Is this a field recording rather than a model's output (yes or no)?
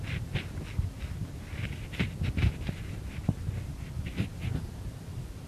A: yes